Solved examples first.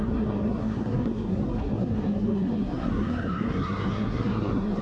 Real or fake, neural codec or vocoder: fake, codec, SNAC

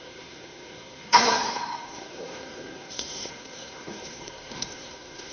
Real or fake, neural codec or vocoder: fake, codec, SNAC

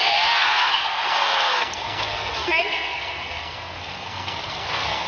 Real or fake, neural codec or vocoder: fake, codec, SNAC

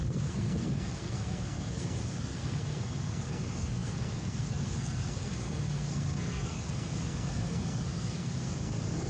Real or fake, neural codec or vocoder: fake, codec, SNAC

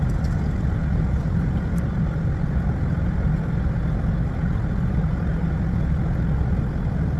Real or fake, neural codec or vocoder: real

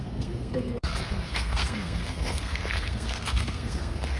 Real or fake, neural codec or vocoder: fake, codec, SNAC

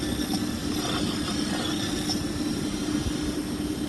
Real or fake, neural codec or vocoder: real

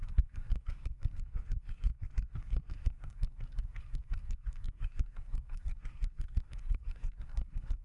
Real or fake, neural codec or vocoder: fake, codec, SNAC